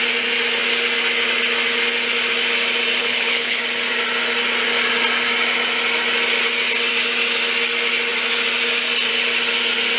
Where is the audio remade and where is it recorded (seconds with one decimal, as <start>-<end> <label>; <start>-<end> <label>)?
0.0-3.0 recorded; 3.0-3.6 remade; 3.6-10.0 recorded